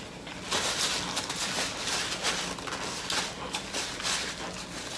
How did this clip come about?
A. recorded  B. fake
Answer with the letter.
A